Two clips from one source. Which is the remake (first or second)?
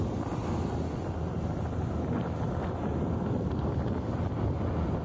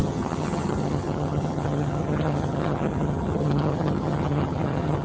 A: second